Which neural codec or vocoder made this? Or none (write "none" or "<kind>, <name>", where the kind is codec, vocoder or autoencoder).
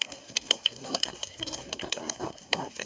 codec, SNAC